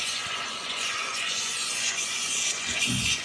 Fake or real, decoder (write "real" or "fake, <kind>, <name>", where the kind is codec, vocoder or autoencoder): fake, vocoder, Vocos